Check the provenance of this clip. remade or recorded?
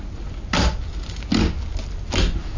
recorded